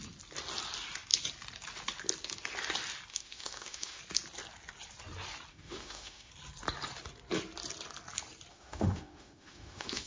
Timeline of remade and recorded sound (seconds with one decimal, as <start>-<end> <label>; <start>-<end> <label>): 0.0-3.1 recorded; 3.1-4.0 remade; 4.0-5.5 recorded; 5.5-6.3 remade; 6.3-8.5 recorded; 8.5-10.1 remade